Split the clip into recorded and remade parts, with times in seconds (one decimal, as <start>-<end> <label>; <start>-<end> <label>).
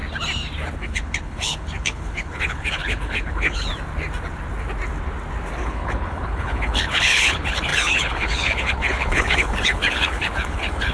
0.0-0.8 recorded; 0.8-3.7 remade; 3.7-5.6 recorded; 5.6-10.9 remade